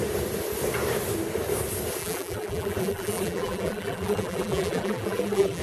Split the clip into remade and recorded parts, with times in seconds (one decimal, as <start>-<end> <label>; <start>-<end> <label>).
0.0-2.0 recorded; 2.0-5.6 remade